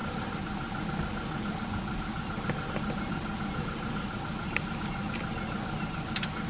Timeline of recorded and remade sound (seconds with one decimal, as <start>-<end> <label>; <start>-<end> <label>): 0.0-6.5 recorded